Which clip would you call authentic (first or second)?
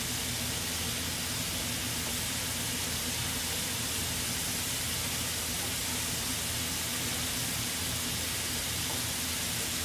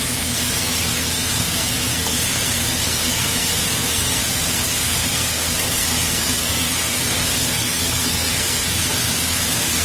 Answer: first